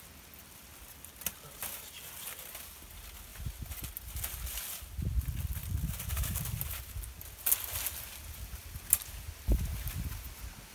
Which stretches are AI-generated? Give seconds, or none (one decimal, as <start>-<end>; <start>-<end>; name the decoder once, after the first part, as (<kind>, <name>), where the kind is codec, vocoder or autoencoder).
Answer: none